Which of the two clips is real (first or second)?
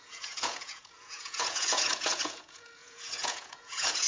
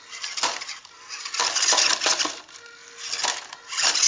second